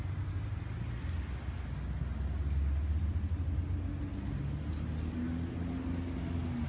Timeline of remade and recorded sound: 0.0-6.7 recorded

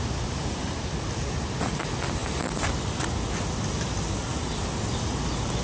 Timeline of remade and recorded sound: 0.0-5.6 recorded